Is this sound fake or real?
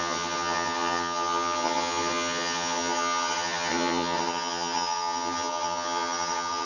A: fake